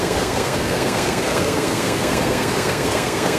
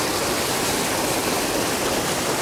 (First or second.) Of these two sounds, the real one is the second